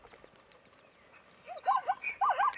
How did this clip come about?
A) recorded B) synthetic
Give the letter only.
A